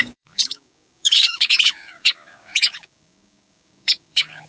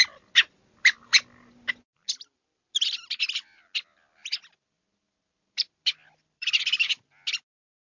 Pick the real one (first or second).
second